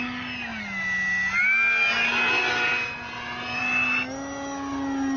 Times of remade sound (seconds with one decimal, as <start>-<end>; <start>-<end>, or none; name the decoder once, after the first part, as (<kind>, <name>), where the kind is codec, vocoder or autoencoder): none

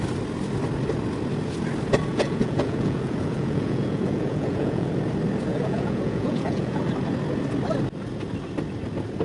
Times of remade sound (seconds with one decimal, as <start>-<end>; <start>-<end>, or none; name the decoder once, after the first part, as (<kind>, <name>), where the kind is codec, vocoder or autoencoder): 2.1-4.9 (vocoder, Vocos); 5.5-6.8

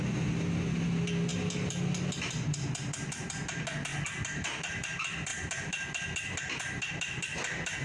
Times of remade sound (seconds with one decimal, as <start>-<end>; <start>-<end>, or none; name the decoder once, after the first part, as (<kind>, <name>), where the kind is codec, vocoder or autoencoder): none